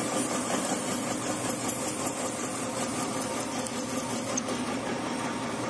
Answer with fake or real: real